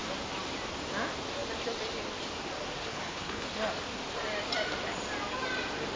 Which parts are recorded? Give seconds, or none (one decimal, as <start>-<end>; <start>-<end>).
0.0-2.9; 3.5-6.0